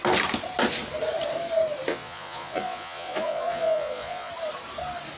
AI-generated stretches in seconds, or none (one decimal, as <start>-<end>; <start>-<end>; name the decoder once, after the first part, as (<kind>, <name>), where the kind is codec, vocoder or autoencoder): 1.9-4.3 (vocoder, Vocos)